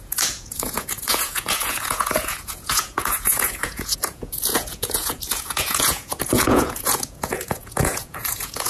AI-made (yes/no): yes